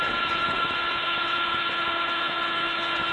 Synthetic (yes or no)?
yes